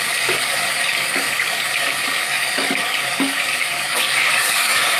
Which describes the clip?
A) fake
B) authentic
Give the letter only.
A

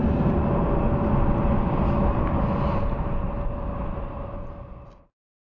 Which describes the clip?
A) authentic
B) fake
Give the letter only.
A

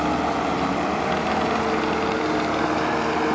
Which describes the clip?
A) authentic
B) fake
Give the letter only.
A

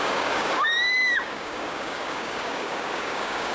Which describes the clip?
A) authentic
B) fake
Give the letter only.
B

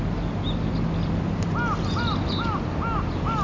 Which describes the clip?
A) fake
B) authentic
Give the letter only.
B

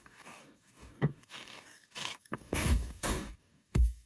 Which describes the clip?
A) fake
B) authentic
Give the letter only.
A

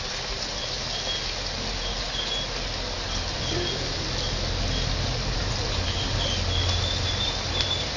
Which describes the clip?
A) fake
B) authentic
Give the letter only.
B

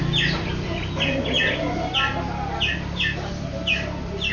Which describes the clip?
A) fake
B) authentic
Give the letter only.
B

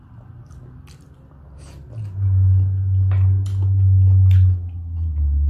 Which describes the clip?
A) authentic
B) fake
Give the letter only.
A